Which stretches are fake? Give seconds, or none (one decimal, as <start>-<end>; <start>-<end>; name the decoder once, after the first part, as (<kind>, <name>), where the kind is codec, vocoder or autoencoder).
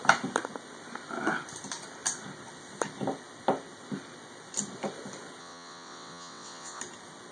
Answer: 5.4-6.8 (vocoder, WaveNeXt)